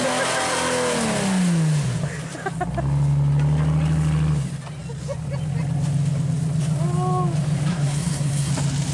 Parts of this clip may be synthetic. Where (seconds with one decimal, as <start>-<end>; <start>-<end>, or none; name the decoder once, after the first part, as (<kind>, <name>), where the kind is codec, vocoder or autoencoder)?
7.7-8.5 (codec, SNAC)